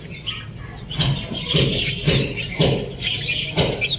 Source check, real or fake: real